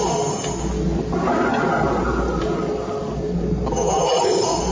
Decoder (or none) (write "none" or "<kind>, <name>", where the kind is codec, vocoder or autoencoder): none